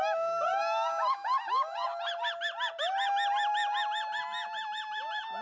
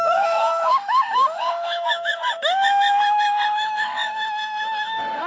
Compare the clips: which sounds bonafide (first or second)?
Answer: first